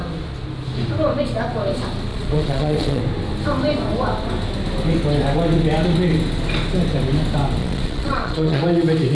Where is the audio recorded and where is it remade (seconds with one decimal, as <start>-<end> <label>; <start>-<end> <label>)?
0.0-2.1 recorded; 2.1-3.0 remade; 3.0-7.6 recorded; 7.6-8.6 remade; 8.6-9.1 recorded